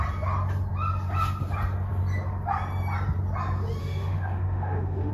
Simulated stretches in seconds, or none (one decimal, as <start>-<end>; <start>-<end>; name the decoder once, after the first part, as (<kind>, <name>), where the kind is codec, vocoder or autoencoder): 3.8-5.1 (autoencoder, DAC-VAE)